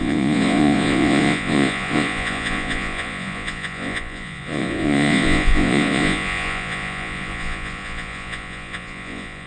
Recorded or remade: remade